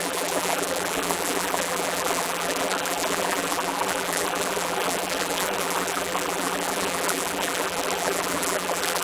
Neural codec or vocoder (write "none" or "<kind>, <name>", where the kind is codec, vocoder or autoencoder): vocoder, BigVGAN v2